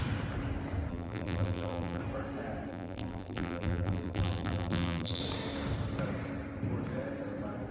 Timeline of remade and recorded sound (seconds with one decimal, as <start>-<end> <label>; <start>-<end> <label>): 0.0-0.9 recorded; 0.9-2.0 remade; 2.0-2.7 recorded; 2.7-5.2 remade; 5.2-7.7 recorded